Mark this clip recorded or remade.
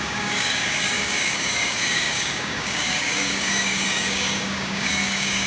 remade